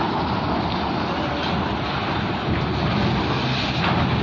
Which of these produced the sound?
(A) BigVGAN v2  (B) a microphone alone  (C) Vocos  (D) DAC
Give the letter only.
B